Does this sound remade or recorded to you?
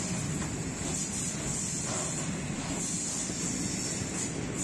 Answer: recorded